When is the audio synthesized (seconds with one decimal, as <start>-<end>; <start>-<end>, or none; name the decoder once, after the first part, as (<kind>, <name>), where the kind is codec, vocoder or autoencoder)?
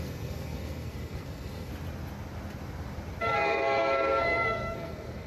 0.0-1.7 (codec, SNAC); 3.2-5.3